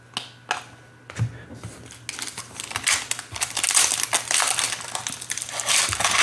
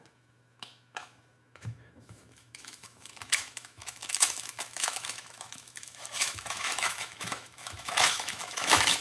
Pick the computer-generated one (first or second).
second